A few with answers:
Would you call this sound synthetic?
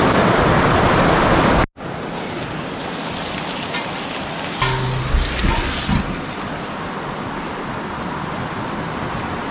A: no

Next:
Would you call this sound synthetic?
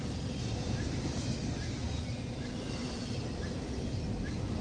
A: no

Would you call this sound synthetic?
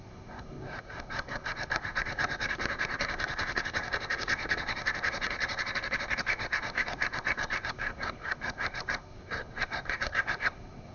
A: yes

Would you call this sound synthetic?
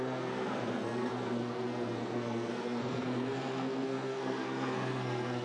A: yes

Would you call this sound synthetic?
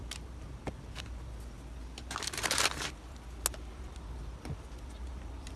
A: no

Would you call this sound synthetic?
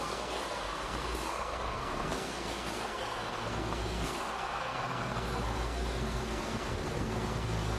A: yes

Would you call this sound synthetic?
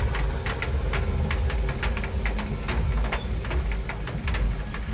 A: no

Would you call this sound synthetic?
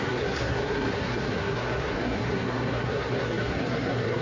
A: yes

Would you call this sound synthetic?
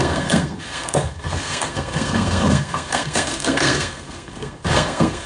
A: yes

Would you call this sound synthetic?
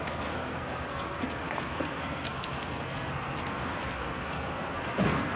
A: yes